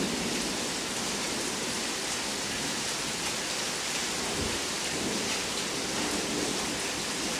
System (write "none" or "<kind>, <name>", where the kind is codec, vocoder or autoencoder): none